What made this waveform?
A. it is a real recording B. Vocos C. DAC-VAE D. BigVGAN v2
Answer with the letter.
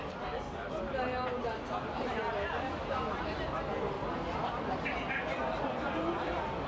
A